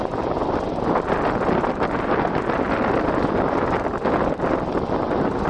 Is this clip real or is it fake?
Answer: real